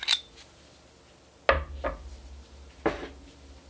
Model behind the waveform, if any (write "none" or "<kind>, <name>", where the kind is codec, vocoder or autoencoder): none